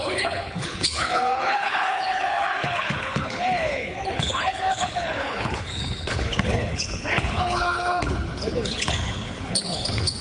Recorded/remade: remade